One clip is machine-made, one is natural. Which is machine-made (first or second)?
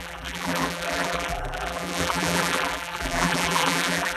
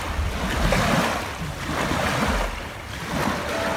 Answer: first